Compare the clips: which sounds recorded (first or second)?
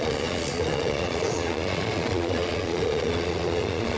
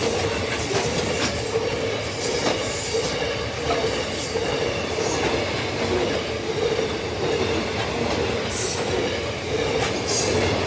second